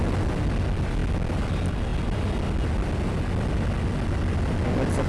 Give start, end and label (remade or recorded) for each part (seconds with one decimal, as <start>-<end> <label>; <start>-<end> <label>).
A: 0.0-5.1 recorded